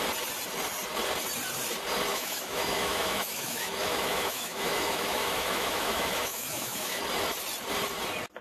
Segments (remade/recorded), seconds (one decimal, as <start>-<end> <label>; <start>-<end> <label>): 0.0-2.1 recorded; 2.1-7.0 remade; 7.0-8.4 recorded